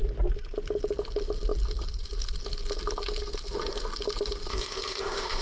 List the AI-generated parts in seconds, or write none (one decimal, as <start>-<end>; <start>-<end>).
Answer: 4.5-5.4